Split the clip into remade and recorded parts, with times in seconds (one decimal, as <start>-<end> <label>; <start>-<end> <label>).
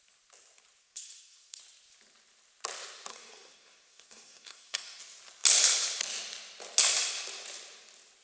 0.0-0.8 recorded; 0.8-1.6 remade; 1.6-3.1 recorded; 3.1-5.0 remade; 5.0-8.2 recorded